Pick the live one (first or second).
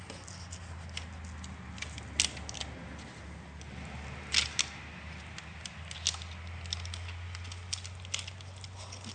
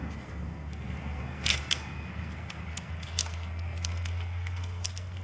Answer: first